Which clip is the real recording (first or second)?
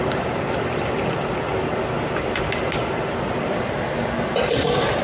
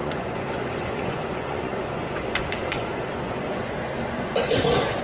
first